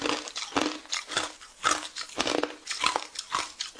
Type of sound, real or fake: real